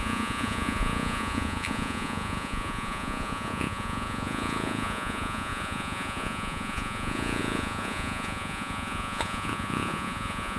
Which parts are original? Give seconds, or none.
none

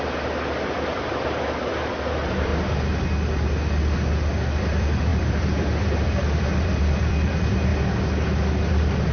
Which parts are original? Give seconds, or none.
2.5-4.6; 7.7-8.7

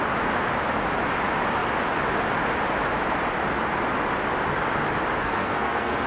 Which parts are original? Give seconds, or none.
0.0-5.2

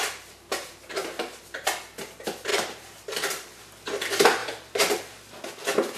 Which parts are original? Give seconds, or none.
0.0-2.5; 3.6-4.4; 5.0-6.0